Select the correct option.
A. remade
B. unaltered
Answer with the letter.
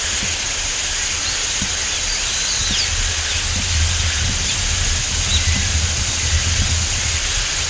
B